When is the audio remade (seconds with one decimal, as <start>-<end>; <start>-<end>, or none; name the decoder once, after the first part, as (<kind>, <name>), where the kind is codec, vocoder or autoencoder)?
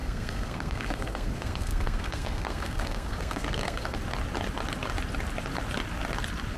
0.0-4.0 (codec, SNAC)